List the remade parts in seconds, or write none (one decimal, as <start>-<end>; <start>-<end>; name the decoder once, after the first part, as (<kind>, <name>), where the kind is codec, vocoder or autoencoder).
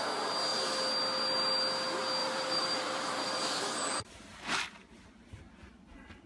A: 2.2-5.4 (vocoder, BigVGAN v2)